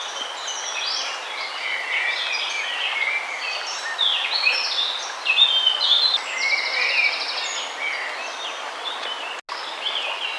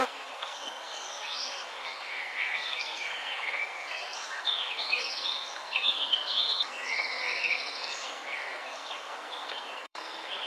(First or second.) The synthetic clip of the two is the second